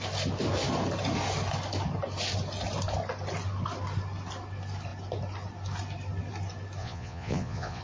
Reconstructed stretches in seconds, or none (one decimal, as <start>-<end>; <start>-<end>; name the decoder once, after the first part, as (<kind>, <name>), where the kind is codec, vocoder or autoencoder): 6.8-7.8 (vocoder, Vocos)